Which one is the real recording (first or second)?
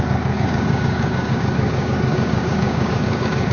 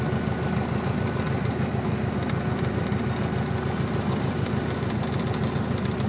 second